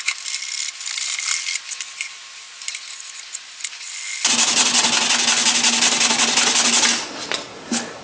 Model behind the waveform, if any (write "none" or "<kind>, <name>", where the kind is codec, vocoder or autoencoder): none